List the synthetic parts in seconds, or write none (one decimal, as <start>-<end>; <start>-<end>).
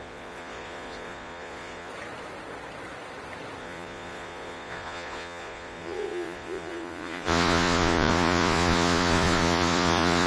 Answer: 0.0-1.9; 3.6-10.3